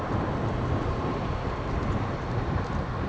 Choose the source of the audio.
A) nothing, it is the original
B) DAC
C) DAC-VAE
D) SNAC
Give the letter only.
A